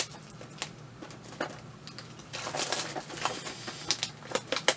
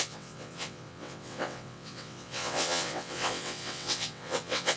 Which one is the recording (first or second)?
first